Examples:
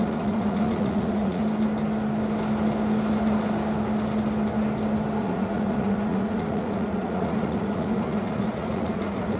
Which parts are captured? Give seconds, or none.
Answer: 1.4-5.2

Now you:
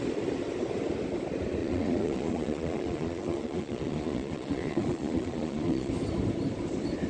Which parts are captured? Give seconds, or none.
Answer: 0.0-1.6; 5.9-7.1

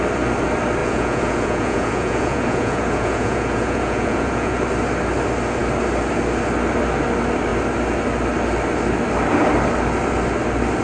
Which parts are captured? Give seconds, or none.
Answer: 0.0-0.8; 4.6-10.8

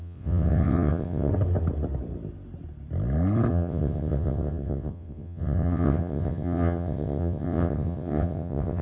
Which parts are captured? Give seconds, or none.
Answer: 1.3-3.5

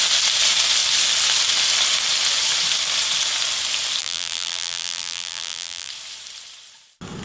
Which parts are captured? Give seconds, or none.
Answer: 0.0-4.0; 5.9-7.2